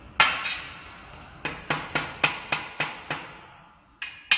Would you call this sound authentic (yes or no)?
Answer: yes